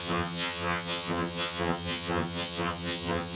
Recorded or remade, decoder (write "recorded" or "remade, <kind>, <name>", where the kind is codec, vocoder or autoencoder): remade, vocoder, HiFi-GAN